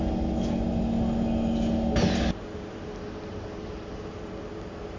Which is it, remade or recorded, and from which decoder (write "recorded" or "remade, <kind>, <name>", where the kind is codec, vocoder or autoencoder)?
recorded